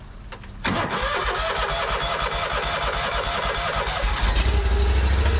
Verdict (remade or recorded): recorded